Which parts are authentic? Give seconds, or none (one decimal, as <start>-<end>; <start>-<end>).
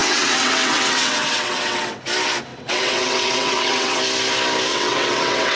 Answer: 2.0-2.5; 4.0-4.7